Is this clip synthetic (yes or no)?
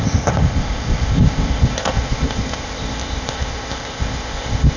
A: yes